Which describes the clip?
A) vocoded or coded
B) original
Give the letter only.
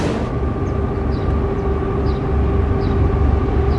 B